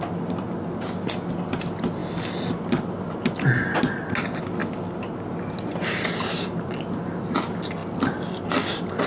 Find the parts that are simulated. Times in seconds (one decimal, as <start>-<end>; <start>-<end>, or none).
none

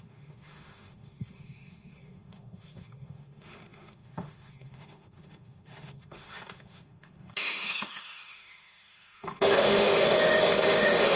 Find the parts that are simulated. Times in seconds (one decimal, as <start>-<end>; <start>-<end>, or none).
0.0-11.2

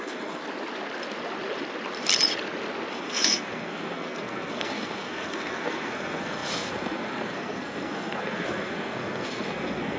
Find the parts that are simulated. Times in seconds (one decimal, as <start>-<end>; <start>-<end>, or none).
0.0-0.4; 2.9-10.0

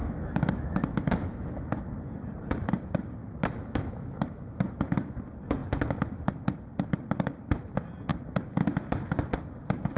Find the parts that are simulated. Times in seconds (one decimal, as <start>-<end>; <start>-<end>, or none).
0.0-1.8; 3.2-5.1

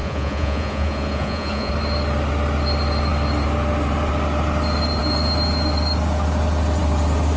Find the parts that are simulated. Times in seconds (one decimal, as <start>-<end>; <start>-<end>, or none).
0.0-1.7

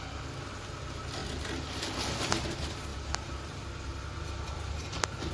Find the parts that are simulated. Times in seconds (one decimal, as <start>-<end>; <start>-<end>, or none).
none

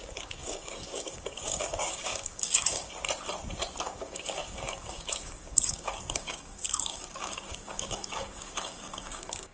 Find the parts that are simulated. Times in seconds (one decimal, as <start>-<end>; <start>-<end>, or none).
0.0-2.8; 3.8-9.5